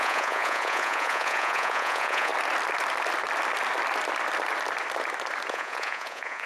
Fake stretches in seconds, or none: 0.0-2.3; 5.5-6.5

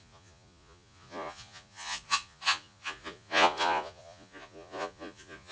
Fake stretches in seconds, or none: 0.0-5.5

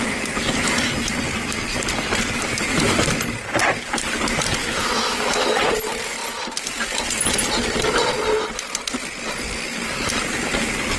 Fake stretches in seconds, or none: 4.6-5.7

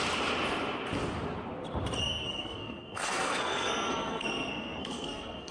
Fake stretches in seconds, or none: 2.0-5.5

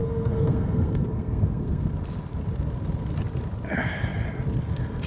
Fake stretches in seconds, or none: 0.0-1.9